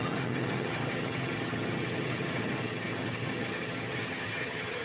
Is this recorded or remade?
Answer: remade